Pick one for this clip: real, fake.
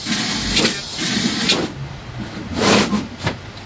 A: real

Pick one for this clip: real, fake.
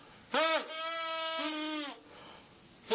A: real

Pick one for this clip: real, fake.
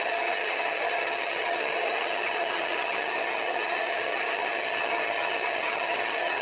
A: fake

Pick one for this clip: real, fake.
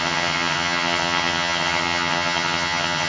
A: fake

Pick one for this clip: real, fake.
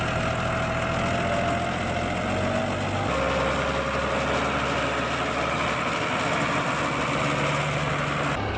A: real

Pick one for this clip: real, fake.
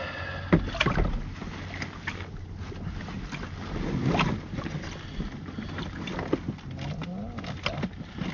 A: real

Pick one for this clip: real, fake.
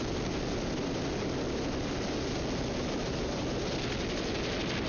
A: real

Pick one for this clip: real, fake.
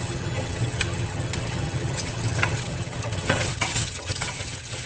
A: fake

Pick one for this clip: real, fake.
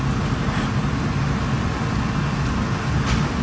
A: real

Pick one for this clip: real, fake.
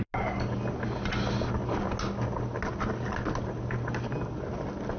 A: real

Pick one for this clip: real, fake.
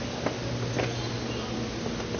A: real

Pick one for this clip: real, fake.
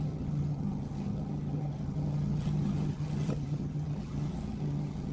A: fake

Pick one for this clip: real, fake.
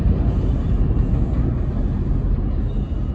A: real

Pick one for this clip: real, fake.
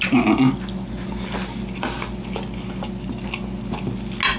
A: real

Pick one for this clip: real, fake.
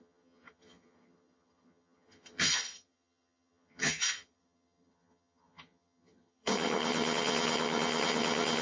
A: fake